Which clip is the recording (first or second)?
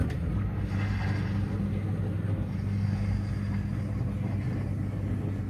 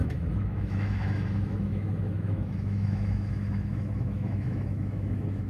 first